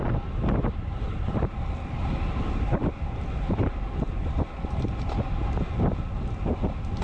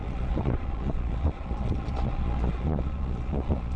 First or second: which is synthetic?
second